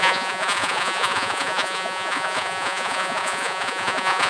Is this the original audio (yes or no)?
no